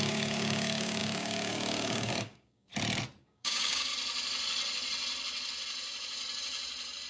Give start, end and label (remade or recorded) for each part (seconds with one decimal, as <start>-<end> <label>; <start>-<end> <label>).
0.0-2.7 remade; 2.7-3.2 recorded; 3.2-3.9 remade; 3.9-7.1 recorded